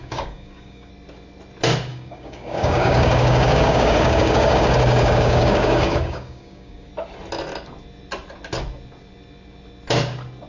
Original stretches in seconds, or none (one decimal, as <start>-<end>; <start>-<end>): 0.9-1.9; 6.9-10.5